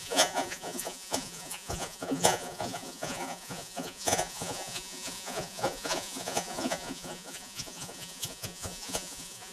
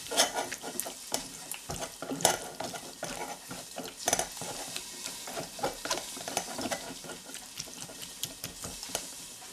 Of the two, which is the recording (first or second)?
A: second